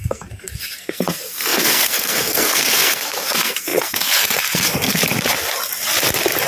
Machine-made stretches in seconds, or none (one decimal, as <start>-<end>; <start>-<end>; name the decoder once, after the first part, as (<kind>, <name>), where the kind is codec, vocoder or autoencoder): 0.0-5.0 (codec, SNAC)